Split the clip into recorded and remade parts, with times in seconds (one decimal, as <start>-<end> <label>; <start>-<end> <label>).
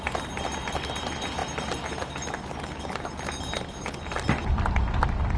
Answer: 0.0-5.4 recorded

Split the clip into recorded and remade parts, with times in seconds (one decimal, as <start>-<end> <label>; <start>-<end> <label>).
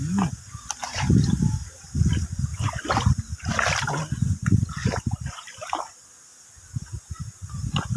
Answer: 0.0-0.8 recorded; 0.8-1.7 remade; 1.7-4.8 recorded; 4.8-5.8 remade; 5.8-8.0 recorded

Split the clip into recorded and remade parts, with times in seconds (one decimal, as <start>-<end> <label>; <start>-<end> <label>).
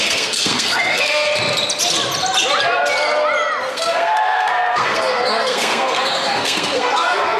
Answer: 0.0-1.3 remade; 1.3-3.7 recorded; 3.7-7.4 remade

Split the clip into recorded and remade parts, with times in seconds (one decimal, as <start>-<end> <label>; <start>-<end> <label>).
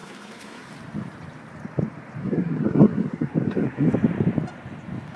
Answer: 0.0-0.7 remade; 0.7-2.2 recorded; 2.2-3.9 remade; 3.9-5.2 recorded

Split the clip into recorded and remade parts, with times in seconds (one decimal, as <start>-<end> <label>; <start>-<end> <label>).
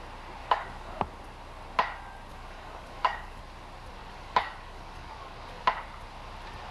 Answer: 0.0-0.4 recorded; 0.4-1.0 remade; 1.0-2.3 recorded; 2.3-3.4 remade; 3.4-4.0 recorded; 4.0-5.6 remade; 5.6-6.7 recorded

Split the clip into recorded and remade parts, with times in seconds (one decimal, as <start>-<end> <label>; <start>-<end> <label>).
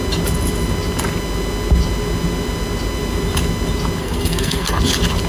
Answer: 0.0-4.0 recorded; 4.0-4.8 remade; 4.8-5.3 recorded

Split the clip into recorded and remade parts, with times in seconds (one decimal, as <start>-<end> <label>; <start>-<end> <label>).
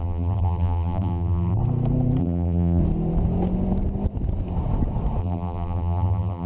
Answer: 0.0-1.6 remade; 1.6-2.2 recorded; 2.2-2.8 remade; 2.8-5.2 recorded; 5.2-6.5 remade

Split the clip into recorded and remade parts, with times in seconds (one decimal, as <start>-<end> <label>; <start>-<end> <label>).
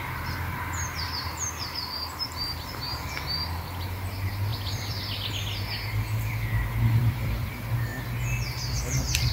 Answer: 0.0-4.5 recorded; 4.5-5.0 remade; 5.0-7.0 recorded; 7.0-7.5 remade; 7.5-9.3 recorded